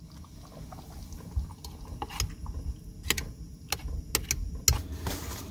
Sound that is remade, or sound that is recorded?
recorded